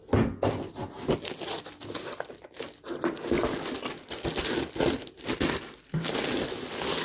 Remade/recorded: recorded